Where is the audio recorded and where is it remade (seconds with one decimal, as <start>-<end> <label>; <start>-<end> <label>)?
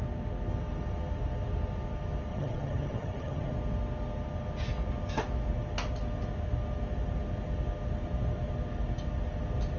0.0-2.3 recorded; 2.3-3.5 remade; 3.5-9.8 recorded